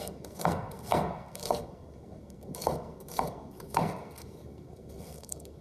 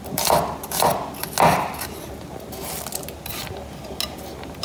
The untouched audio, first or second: second